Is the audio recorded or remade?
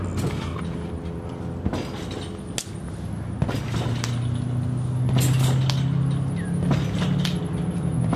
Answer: recorded